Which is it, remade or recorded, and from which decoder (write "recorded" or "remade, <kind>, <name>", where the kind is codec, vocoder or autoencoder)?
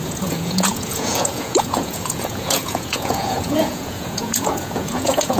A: remade, vocoder, Vocos